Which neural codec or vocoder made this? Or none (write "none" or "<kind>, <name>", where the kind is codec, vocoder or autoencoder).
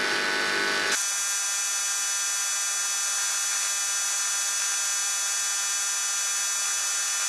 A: none